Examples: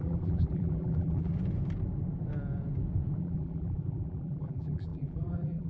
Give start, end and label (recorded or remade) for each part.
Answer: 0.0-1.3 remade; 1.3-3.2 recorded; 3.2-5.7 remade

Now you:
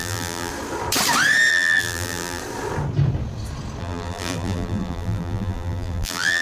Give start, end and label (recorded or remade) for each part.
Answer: 0.0-0.5 remade; 0.5-1.5 recorded; 1.5-2.4 remade; 2.4-3.8 recorded; 3.8-6.4 remade